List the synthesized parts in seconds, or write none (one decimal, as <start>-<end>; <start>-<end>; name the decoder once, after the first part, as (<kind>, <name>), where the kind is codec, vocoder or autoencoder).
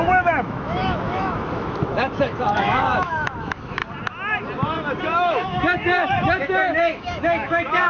0.0-3.8 (autoencoder, DAC-VAE); 5.0-7.9